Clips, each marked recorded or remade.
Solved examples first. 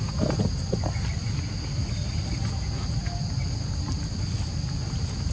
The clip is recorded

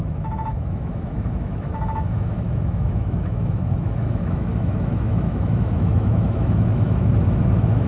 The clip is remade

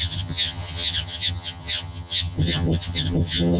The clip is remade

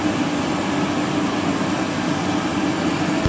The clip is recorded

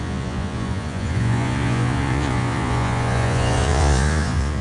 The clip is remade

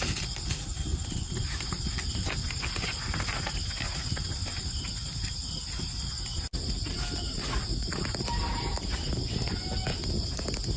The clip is recorded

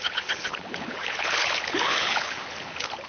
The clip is remade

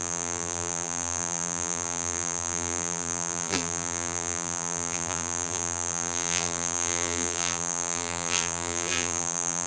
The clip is remade